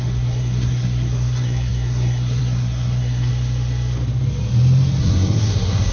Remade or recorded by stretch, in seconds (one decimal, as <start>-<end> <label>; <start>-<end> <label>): 0.0-3.3 remade; 3.3-5.0 recorded; 5.0-5.9 remade